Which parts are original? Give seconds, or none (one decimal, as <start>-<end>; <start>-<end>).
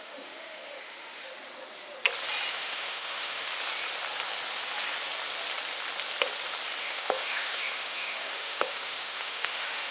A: 1.3-2.5; 3.5-6.8